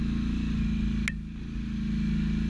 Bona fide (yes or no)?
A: yes